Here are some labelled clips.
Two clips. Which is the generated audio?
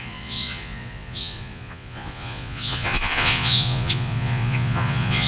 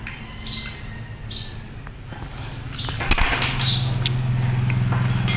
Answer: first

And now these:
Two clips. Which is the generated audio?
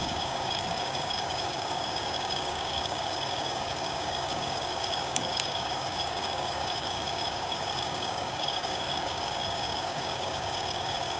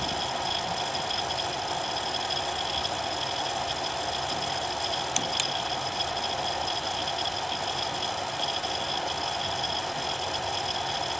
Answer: first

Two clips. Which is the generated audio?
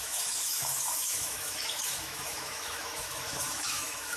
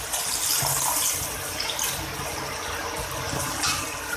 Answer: first